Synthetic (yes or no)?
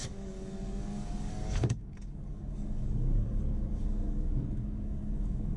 yes